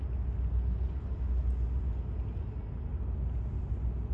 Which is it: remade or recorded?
recorded